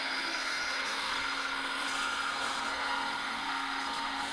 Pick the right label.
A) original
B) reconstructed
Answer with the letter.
B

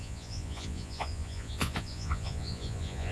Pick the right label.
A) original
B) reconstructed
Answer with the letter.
B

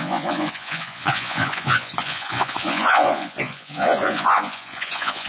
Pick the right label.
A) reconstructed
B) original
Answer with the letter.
A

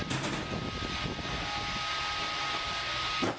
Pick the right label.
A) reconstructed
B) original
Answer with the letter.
B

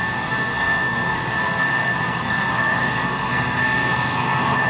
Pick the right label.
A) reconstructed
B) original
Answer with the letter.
A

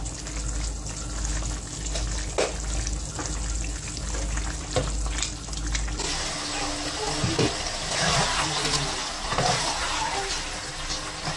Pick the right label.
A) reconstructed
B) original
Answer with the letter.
B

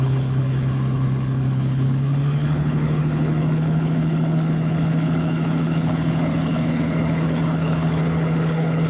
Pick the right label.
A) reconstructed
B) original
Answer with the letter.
A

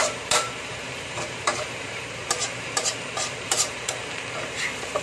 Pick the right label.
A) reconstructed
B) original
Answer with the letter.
A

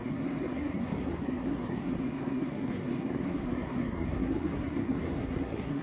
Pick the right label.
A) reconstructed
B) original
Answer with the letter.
A